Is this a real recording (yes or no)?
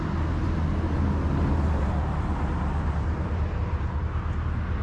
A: yes